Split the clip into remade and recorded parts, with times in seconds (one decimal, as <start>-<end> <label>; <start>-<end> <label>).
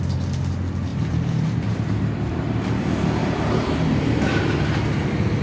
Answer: 0.0-0.9 recorded; 0.9-2.7 remade; 2.7-3.2 recorded; 3.2-4.4 remade; 4.4-5.4 recorded